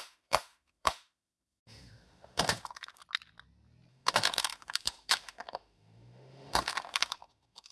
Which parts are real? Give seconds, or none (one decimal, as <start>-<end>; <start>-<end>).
3.0-3.9